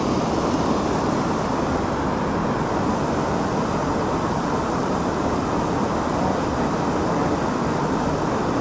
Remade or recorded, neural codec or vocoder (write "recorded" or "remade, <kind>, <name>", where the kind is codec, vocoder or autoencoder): recorded